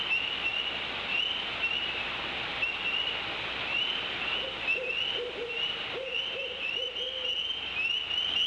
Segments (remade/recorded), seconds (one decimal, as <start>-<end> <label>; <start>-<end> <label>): 0.0-0.5 recorded; 0.5-1.1 remade; 1.1-5.4 recorded; 5.4-8.5 remade

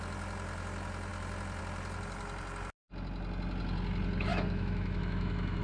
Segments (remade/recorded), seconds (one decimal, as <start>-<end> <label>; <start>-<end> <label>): 0.0-4.3 recorded; 4.3-5.6 remade

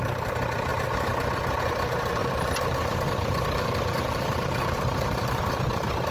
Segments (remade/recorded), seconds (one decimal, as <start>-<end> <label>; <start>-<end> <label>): 0.0-2.2 recorded; 2.2-5.4 remade; 5.4-6.1 recorded

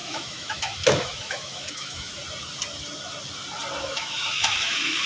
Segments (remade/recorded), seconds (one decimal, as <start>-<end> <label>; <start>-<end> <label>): 0.0-2.2 remade; 2.2-3.8 recorded; 3.8-5.1 remade

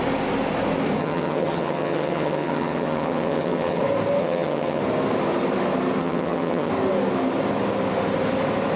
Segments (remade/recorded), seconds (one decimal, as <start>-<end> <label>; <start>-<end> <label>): 0.0-1.0 recorded; 1.0-3.8 remade; 3.8-4.2 recorded; 4.2-4.8 remade; 4.8-6.0 recorded; 6.0-6.7 remade; 6.7-8.8 recorded